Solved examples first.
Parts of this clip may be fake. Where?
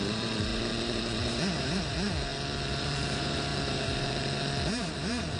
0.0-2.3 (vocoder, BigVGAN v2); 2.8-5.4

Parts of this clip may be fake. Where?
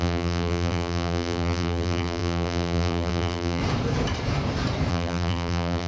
0.0-3.6 (vocoder, BigVGAN v2); 4.9-5.9